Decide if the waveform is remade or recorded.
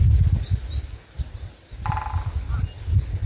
recorded